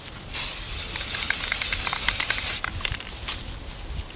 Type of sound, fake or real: real